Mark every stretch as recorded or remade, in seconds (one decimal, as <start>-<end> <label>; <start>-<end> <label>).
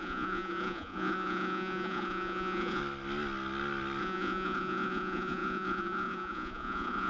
0.0-2.8 remade; 2.8-4.0 recorded; 4.0-7.1 remade